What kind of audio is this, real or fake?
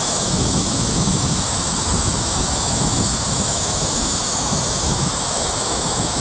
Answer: fake